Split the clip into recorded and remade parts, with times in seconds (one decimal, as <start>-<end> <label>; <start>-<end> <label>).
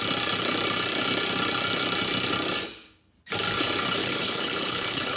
0.0-4.0 recorded; 4.0-5.2 remade